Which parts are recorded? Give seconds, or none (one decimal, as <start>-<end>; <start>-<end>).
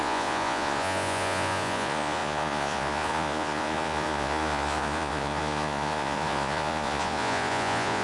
none